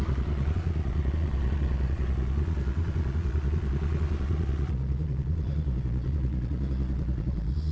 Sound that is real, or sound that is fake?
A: fake